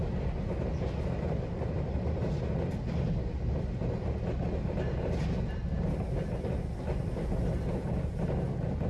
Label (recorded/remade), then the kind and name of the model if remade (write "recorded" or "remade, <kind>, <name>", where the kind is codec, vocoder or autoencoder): recorded